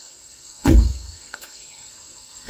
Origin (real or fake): fake